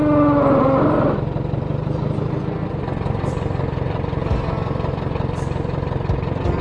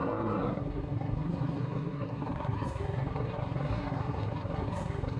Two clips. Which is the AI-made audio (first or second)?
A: second